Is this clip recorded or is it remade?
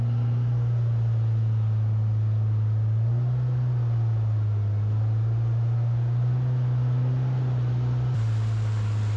recorded